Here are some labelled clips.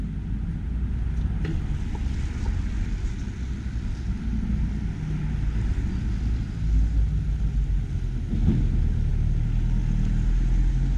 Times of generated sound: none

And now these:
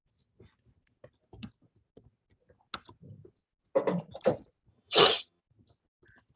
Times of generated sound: 4.7-5.4 (vocoder, HiFi-GAN)

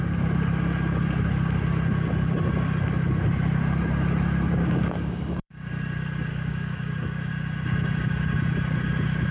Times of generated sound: 4.6-5.7 (codec, DAC); 6.3-7.3

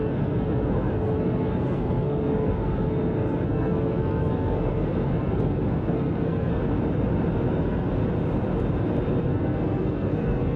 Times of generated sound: 0.0-6.6 (codec, SNAC); 7.5-8.0; 9.2-10.6

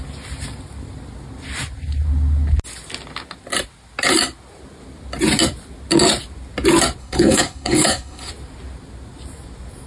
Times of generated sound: 7.0-8.3 (codec, HILCodec)